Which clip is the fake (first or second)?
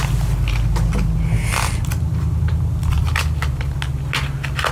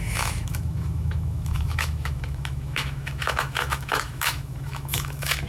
second